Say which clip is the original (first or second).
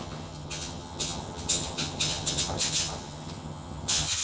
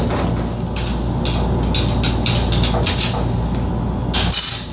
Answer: second